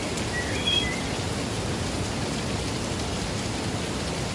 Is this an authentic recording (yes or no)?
yes